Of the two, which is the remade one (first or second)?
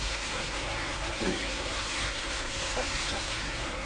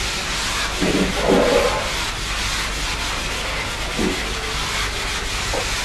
first